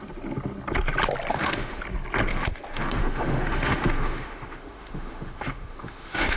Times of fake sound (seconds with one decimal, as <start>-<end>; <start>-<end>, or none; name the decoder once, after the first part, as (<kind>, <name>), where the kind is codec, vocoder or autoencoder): 1.3-1.8 (autoencoder, DAC-VAE); 2.3-6.4